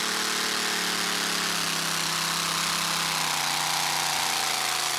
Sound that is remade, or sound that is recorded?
recorded